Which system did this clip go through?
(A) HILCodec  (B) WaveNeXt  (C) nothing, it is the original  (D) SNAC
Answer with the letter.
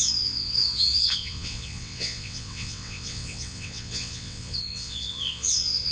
B